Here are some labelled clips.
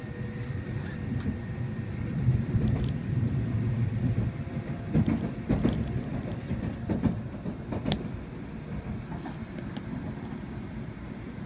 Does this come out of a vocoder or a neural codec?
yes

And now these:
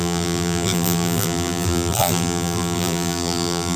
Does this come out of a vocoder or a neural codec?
yes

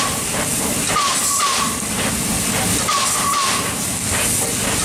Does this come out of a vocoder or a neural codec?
no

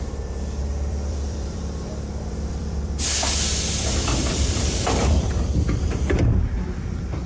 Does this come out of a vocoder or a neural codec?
yes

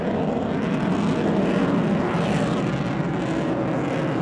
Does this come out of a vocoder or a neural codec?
no